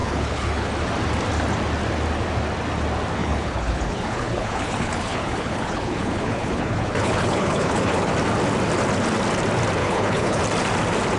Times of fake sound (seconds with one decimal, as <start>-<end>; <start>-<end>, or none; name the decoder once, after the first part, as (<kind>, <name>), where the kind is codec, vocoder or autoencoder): 0.0-0.7 (codec, HILCodec); 3.2-8.0; 9.8-10.4